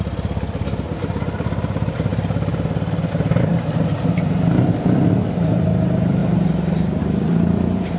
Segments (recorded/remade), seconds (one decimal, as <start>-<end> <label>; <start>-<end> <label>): 0.0-2.1 remade; 2.1-3.4 recorded; 3.4-6.2 remade; 6.2-7.0 recorded; 7.0-8.0 remade